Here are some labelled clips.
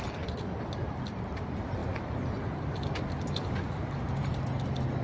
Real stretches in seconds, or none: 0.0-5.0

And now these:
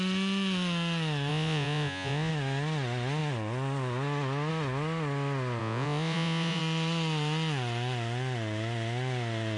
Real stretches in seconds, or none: 0.0-1.3; 2.3-5.6; 6.6-9.6

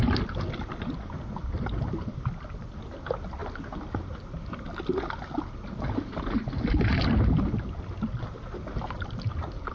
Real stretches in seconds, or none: 0.0-9.7